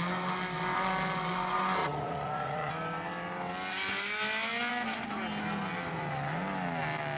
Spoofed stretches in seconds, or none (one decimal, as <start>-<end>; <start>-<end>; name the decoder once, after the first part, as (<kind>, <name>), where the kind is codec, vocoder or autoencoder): 1.8-2.7 (vocoder, Vocos)